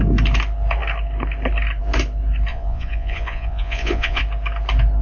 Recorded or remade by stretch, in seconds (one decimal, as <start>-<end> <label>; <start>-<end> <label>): 0.0-2.5 recorded; 2.5-4.2 remade; 4.2-5.0 recorded